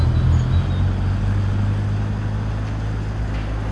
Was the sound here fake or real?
real